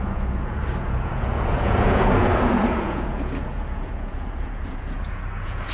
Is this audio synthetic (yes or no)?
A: yes